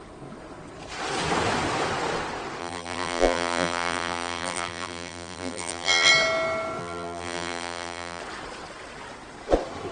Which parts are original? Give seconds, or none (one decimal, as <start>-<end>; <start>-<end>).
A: 0.0-2.6; 6.1-6.8; 8.2-9.9